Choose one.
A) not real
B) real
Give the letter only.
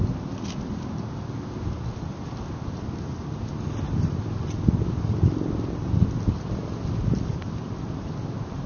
B